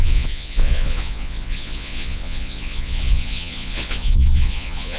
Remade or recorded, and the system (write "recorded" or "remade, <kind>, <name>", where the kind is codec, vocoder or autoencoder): remade, vocoder, Vocos